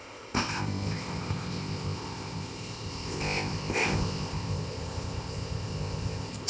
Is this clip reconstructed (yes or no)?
yes